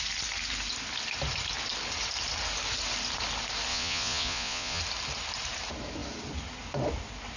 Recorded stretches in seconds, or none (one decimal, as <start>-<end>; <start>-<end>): 0.0-3.7; 4.8-7.4